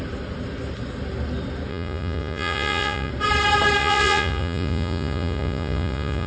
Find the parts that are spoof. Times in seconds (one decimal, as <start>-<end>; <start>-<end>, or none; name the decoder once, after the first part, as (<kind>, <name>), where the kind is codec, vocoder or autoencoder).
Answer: 1.7-3.1 (vocoder, Vocos); 3.8-6.3